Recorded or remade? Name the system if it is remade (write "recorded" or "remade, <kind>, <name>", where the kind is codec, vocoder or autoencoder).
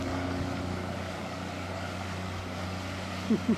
remade, codec, DAC